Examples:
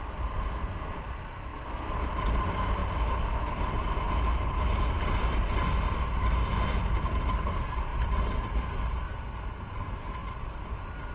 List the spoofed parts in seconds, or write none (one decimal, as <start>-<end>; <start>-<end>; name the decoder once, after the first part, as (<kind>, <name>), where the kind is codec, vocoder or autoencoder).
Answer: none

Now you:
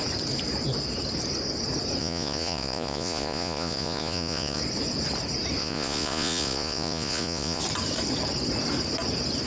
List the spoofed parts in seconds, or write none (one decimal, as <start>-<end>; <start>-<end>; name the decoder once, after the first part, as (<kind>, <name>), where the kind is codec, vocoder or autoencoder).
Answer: 2.0-4.6 (vocoder, Vocos); 5.6-7.6

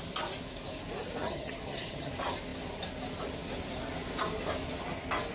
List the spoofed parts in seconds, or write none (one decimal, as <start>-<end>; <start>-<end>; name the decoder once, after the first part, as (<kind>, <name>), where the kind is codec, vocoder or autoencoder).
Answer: 1.2-2.1 (vocoder, HiFi-GAN)

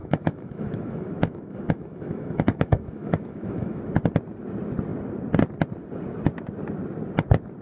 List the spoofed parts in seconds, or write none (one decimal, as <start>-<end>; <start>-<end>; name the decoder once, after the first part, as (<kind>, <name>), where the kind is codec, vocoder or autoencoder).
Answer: 0.0-3.8 (autoencoder, DAC-VAE)

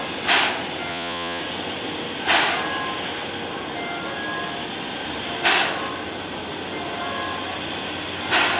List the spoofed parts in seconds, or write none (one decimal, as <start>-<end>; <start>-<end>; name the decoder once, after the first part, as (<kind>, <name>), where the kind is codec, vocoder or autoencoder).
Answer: 0.9-1.4 (vocoder, Vocos)

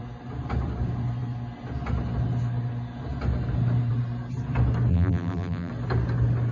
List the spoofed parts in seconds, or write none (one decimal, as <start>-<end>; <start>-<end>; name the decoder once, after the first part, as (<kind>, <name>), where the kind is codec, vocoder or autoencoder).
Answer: 4.9-5.7 (vocoder, BigVGAN v2)

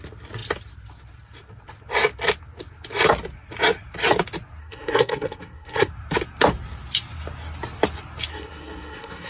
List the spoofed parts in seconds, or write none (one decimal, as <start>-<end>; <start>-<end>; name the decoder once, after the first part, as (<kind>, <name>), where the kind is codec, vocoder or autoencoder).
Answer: 4.6-5.9 (codec, SNAC); 8.3-9.3

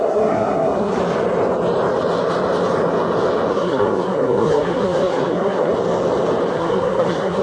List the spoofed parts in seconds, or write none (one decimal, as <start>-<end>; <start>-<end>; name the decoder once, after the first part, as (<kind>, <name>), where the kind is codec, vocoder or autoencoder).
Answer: 0.0-1.0 (codec, SNAC); 3.5-5.7; 6.5-7.4